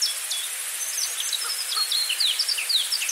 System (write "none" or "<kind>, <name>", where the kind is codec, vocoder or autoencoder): none